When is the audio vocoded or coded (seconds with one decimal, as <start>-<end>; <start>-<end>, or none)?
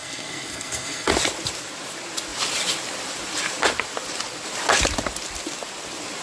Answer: 0.0-1.1